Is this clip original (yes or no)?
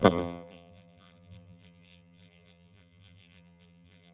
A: no